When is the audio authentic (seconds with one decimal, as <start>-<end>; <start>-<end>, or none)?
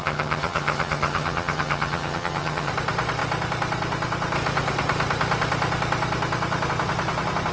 2.7-7.5